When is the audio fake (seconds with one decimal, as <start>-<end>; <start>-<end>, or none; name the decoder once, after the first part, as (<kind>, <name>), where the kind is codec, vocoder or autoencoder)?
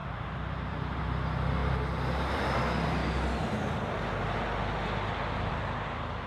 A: 0.0-1.0 (vocoder, BigVGAN v2); 1.6-2.4